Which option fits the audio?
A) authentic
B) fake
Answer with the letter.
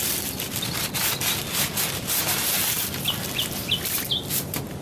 A